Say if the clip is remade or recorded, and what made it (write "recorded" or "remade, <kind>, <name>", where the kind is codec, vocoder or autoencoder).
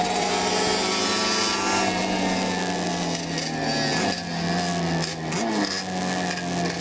recorded